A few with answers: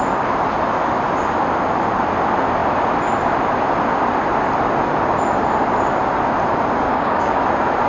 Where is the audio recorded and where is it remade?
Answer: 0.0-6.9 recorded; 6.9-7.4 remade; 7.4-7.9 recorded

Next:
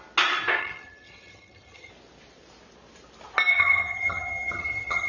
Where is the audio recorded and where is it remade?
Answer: 0.0-0.6 recorded; 0.6-1.9 remade; 1.9-3.5 recorded; 3.5-5.1 remade

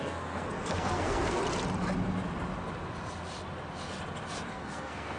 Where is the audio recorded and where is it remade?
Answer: 0.0-1.4 remade; 1.4-4.5 recorded; 4.5-5.2 remade

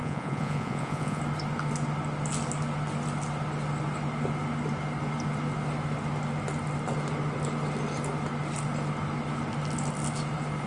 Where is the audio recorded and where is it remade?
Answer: 0.0-1.2 remade; 1.2-10.7 recorded

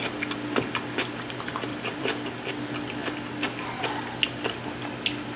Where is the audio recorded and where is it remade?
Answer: 0.0-1.7 recorded; 1.7-2.5 remade; 2.5-5.4 recorded

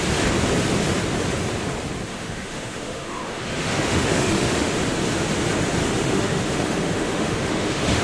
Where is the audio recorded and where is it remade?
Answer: 0.0-2.1 recorded; 2.1-4.7 remade; 4.7-5.8 recorded; 5.8-8.0 remade

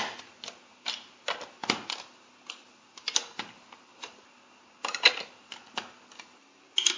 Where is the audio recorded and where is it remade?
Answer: 0.0-7.0 recorded